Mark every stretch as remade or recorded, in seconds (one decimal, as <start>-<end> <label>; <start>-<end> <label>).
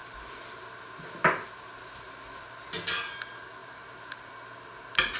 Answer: 0.0-0.6 remade; 0.6-3.6 recorded; 3.6-4.2 remade; 4.2-5.2 recorded